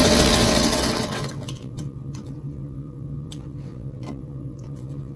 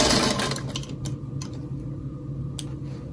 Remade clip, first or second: first